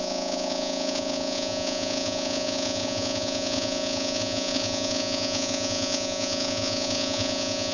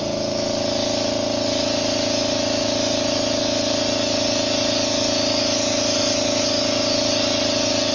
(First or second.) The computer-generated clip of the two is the first